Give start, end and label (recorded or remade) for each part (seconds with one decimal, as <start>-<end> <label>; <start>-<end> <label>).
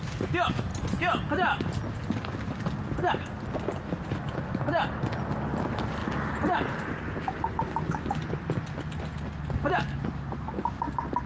0.0-11.3 recorded